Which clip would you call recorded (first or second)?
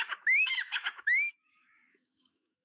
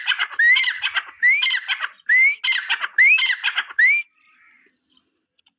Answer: second